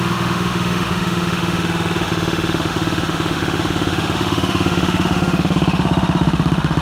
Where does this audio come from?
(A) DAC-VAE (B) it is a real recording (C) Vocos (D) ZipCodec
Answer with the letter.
A